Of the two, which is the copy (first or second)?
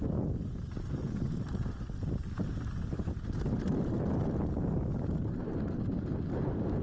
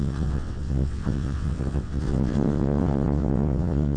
second